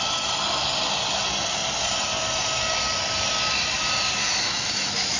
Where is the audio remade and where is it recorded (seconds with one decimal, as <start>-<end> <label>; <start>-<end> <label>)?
0.0-4.2 recorded; 4.2-5.2 remade